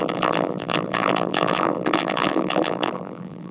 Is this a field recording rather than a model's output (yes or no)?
no